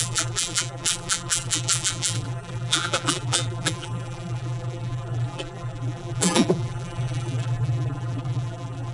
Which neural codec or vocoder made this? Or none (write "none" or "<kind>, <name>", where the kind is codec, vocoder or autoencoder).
vocoder, BigVGAN v2